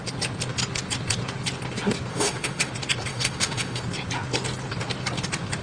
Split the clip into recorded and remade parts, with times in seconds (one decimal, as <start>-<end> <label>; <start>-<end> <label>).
0.0-2.1 recorded; 2.1-2.7 remade; 2.7-3.1 recorded; 3.1-3.8 remade; 3.8-5.6 recorded